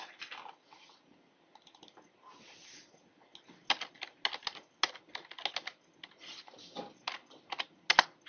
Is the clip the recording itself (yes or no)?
yes